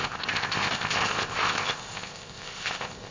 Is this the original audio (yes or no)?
no